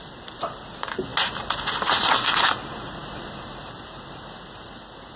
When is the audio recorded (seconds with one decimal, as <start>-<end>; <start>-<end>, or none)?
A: 1.1-2.0